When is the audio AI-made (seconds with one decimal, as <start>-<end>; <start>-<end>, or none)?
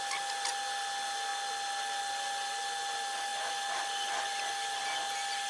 none